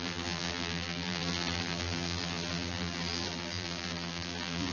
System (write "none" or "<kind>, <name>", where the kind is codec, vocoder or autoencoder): vocoder, BigVGAN v2